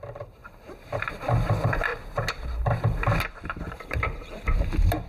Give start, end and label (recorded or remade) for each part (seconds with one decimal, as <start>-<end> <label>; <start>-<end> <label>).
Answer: 0.0-1.9 remade; 1.9-3.6 recorded; 3.6-5.1 remade